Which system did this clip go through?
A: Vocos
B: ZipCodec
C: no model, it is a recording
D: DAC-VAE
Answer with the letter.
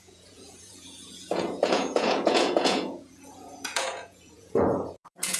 A